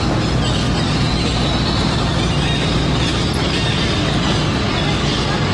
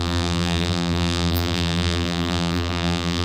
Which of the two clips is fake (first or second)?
second